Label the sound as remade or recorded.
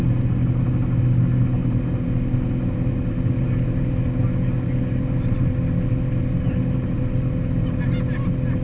recorded